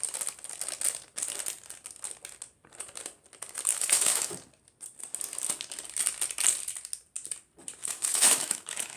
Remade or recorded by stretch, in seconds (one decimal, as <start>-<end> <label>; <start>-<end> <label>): 0.0-3.7 recorded; 3.7-4.3 remade; 4.3-7.8 recorded; 7.8-9.0 remade